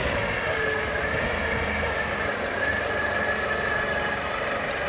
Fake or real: real